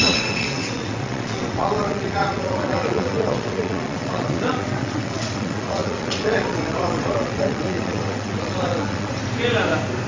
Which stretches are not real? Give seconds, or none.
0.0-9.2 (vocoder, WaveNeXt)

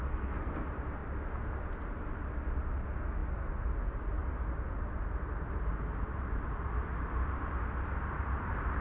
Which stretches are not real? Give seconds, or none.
0.0-0.6 (codec, SNAC)

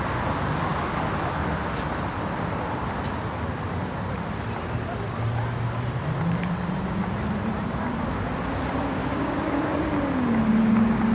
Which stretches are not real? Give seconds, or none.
9.0-9.8 (codec, DAC)